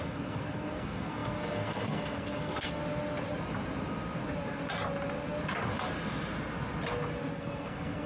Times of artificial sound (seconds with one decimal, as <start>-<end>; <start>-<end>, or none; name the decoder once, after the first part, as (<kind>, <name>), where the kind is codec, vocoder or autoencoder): 0.0-2.8 (codec, SNAC); 7.3-8.1